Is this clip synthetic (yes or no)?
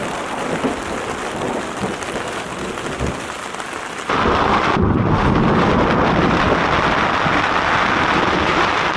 no